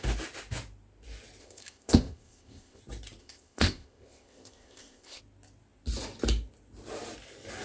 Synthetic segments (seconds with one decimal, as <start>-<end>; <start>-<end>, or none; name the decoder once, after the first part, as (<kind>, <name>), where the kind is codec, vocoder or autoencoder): 1.4-2.8 (codec, ZipCodec); 3.2-5.2